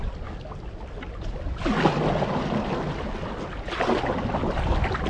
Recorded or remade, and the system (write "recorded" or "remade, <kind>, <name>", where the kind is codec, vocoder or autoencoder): recorded